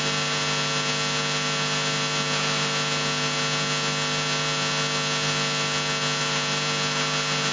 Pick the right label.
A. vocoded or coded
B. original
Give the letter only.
B